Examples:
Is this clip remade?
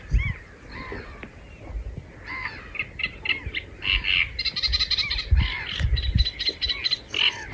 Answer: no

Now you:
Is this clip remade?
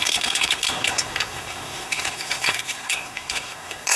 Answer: yes